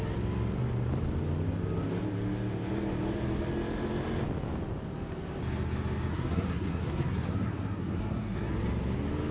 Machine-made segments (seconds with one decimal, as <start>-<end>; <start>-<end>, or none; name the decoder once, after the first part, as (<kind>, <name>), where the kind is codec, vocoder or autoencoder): 6.1-8.5 (codec, SNAC)